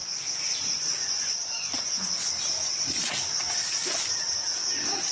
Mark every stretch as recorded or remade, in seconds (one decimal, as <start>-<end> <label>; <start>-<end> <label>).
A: 0.0-2.1 remade; 2.1-5.1 recorded